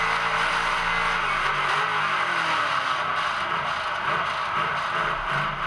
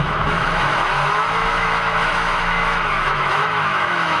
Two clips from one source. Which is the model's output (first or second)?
second